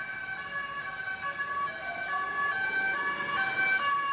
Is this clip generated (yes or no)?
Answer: no